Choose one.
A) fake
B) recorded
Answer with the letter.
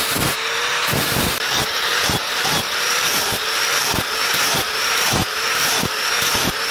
A